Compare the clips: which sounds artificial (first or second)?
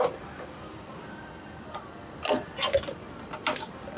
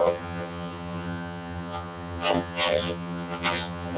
second